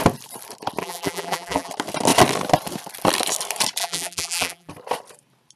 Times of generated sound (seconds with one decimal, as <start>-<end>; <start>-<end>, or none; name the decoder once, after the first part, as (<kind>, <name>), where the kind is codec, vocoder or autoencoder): 0.8-1.7 (vocoder, BigVGAN v2); 3.8-4.7